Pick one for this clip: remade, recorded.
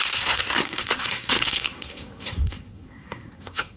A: remade